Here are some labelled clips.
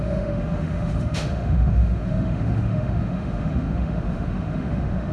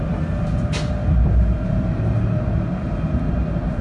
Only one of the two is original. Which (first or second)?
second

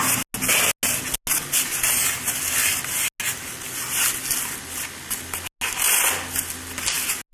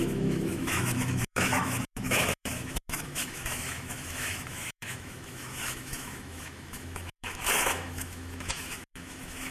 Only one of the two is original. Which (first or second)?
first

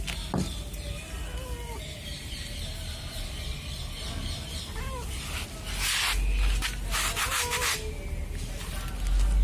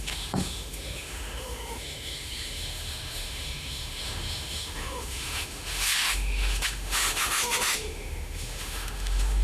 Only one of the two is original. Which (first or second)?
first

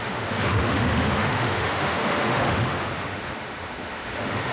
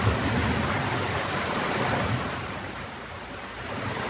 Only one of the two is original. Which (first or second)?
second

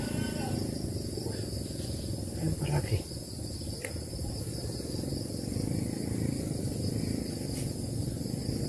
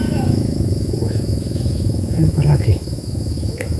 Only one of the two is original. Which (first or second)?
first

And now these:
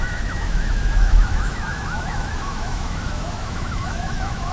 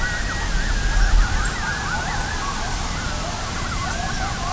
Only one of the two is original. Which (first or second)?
second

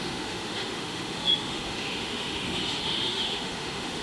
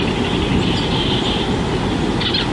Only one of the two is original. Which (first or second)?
second